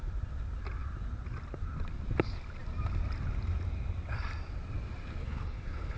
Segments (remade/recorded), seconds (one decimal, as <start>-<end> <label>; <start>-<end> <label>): 0.0-5.2 recorded; 5.2-6.0 remade